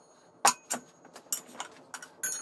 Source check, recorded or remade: recorded